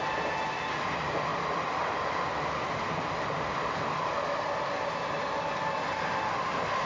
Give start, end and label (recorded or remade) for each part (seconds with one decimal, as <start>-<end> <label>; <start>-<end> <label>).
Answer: 0.0-6.8 recorded